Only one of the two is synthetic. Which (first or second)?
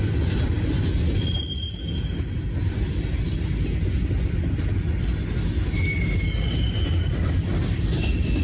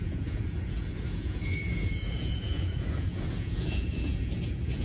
second